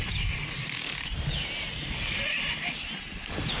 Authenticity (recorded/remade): recorded